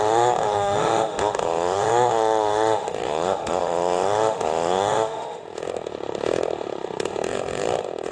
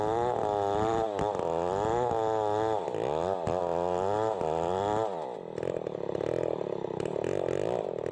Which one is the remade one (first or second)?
first